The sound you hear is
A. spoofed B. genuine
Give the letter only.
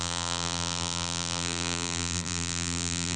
A